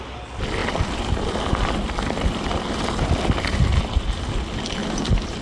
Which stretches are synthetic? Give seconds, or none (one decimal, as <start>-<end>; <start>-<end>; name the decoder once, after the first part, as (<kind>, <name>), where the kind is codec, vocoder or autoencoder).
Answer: none